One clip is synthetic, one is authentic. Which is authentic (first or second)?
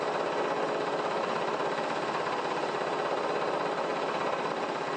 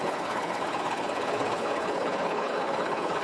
first